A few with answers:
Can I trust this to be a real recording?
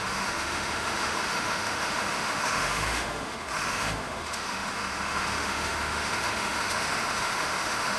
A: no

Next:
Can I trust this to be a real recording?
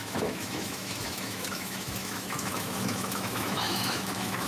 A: no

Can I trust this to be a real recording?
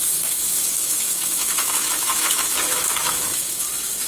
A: no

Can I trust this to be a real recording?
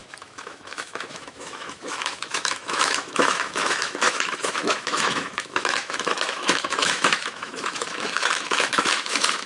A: no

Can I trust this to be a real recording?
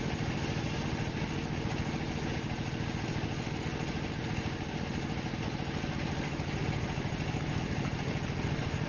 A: yes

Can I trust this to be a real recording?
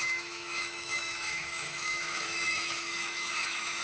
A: no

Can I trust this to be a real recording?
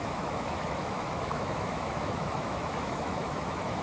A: no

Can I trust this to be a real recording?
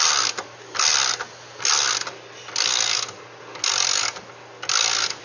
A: yes